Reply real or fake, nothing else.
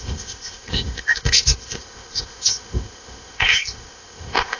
fake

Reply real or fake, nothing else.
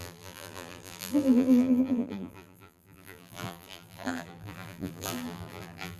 fake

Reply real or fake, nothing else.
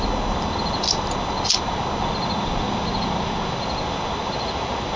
real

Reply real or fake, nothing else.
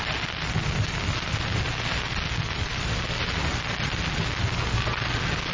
real